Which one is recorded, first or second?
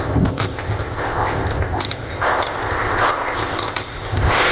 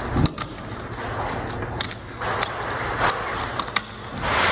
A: second